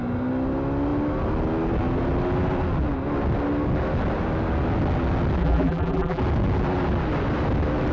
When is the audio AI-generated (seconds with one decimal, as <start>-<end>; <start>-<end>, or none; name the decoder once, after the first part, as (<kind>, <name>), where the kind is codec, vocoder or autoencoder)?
5.4-6.2 (vocoder, BigVGAN v2)